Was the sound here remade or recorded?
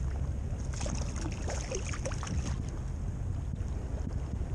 recorded